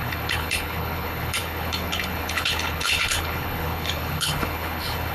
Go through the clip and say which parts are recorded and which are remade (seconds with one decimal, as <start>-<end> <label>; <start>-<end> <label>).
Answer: 0.0-5.1 remade